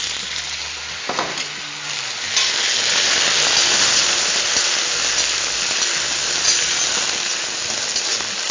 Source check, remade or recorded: recorded